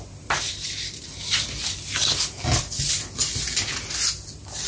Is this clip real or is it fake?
real